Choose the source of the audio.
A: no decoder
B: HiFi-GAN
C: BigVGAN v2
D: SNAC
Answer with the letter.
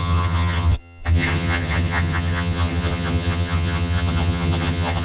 B